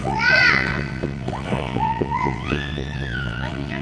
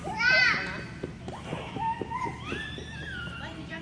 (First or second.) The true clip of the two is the second